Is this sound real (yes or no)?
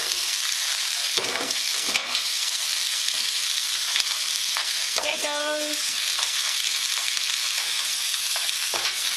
no